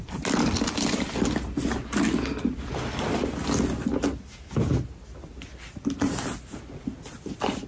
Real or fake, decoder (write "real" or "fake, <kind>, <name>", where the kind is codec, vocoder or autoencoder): real